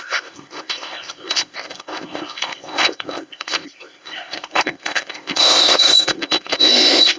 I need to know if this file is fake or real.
fake